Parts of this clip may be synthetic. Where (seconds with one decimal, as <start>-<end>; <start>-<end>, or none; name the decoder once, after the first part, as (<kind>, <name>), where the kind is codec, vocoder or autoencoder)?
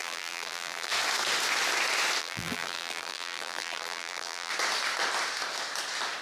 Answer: 0.0-0.9 (vocoder, BigVGAN v2); 2.2-4.5